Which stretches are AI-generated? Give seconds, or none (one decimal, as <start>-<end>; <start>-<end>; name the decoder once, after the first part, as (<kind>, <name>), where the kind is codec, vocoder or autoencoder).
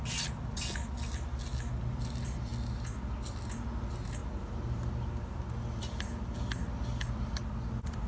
none